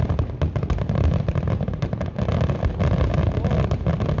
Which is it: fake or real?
real